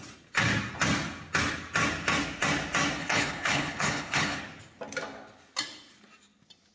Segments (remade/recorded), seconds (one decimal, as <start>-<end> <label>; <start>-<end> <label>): 0.0-3.0 recorded; 3.0-4.4 remade; 4.4-6.7 recorded

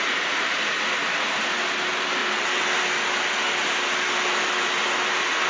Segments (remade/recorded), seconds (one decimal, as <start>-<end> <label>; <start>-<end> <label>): 0.0-5.5 recorded

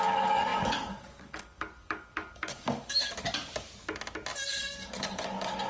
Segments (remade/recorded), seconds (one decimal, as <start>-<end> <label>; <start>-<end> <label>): 0.0-3.4 remade; 3.4-4.5 recorded; 4.5-5.7 remade

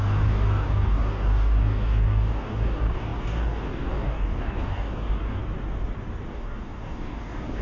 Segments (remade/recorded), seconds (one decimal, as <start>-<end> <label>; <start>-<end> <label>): 0.0-5.4 remade; 5.4-6.3 recorded; 6.3-7.6 remade

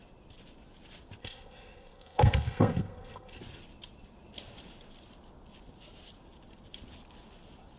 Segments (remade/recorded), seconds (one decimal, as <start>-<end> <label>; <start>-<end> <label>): 0.0-1.2 recorded; 1.2-3.4 remade; 3.4-7.8 recorded